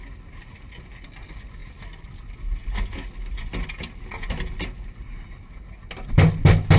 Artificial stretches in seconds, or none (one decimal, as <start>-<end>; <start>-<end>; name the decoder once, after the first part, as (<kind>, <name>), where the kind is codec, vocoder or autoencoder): none